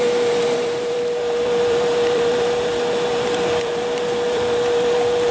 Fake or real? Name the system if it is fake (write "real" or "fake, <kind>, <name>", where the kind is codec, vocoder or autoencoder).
fake, vocoder, BigVGAN v2